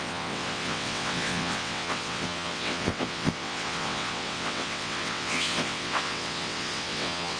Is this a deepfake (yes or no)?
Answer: yes